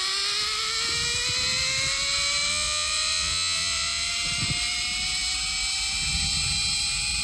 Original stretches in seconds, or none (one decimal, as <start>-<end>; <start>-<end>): 0.0-2.5; 4.1-7.2